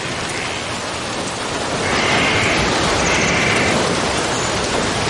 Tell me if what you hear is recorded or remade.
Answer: recorded